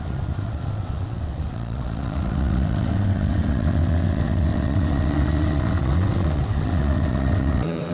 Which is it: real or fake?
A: fake